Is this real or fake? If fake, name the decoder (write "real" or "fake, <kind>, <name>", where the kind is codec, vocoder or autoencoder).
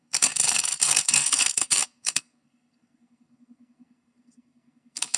fake, codec, SNAC